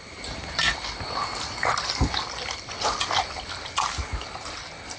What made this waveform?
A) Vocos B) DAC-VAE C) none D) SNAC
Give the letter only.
C